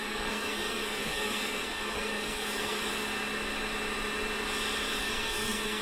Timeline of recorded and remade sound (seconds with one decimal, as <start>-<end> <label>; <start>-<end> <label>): 0.0-2.9 remade; 2.9-5.0 recorded; 5.0-5.8 remade